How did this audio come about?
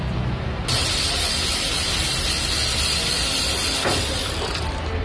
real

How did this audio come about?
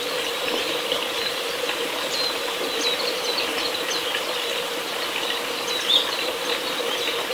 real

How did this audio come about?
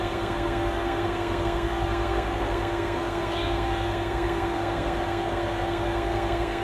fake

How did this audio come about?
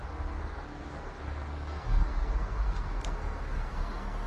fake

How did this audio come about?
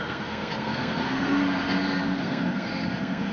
fake